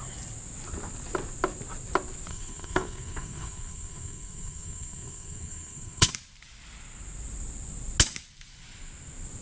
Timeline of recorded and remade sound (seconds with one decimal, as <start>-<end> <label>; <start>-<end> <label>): 0.0-2.3 recorded; 2.3-6.1 remade; 6.1-9.4 recorded